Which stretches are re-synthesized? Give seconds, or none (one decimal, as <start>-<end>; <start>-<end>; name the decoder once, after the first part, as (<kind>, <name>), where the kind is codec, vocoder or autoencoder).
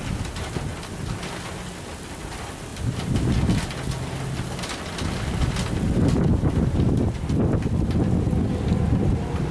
none